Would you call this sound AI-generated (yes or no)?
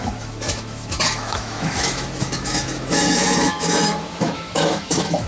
yes